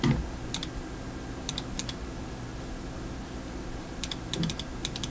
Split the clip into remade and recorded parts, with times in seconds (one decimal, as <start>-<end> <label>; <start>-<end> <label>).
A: 0.0-5.1 recorded